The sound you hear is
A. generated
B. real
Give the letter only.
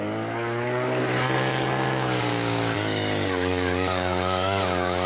A